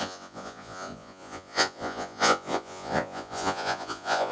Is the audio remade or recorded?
remade